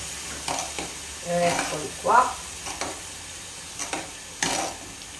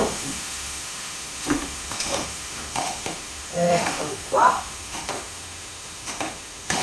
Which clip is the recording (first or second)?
first